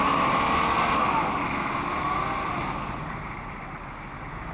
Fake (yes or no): no